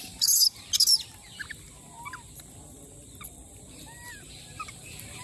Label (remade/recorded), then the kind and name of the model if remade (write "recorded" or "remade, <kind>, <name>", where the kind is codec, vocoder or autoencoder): recorded